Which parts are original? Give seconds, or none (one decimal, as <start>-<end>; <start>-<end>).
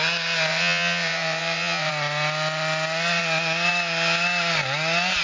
0.0-0.5; 1.9-5.2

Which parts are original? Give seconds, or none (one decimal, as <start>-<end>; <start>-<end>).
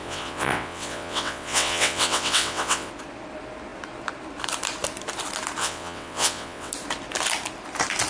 2.9-5.6; 6.7-8.1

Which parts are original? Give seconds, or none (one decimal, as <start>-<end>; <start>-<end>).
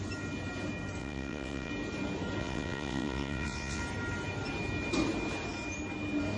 0.0-1.0; 1.7-2.4; 3.8-6.4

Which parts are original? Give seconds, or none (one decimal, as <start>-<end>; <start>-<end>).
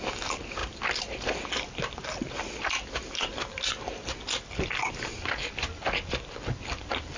0.0-7.2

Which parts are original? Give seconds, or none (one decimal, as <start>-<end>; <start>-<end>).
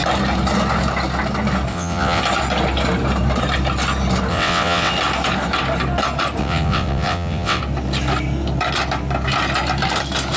0.0-1.7; 2.2-4.3; 4.9-6.4; 7.6-10.4